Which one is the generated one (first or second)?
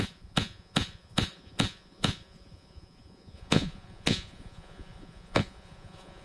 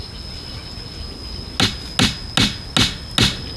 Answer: first